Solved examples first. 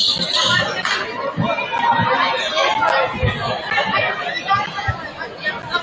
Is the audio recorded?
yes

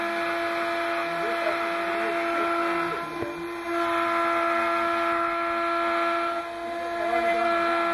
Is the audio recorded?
yes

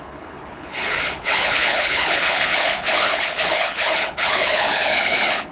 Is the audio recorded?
no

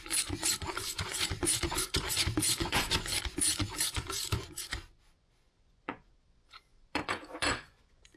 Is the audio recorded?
no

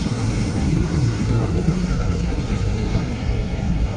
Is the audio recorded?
no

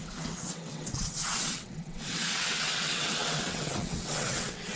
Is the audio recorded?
no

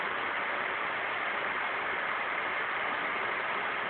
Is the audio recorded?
yes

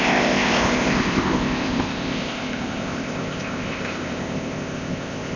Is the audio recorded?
no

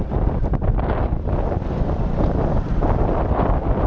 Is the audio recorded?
yes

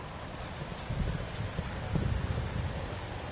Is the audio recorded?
yes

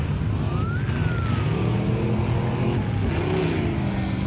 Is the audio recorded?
yes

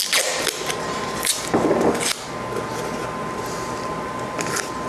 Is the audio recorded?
yes